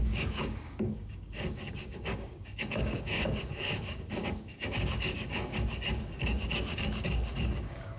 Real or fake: fake